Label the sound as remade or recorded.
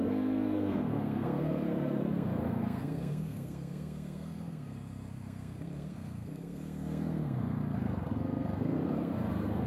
remade